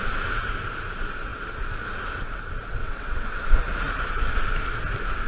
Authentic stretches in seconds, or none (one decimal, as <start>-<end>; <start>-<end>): 0.0-2.8; 3.4-5.3